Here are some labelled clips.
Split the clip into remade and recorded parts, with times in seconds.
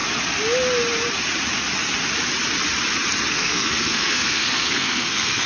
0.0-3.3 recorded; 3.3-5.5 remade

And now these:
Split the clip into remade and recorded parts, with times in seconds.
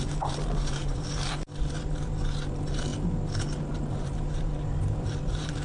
0.0-2.9 remade; 2.9-3.9 recorded; 3.9-5.6 remade